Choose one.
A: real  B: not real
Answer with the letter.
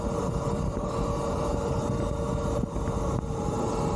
A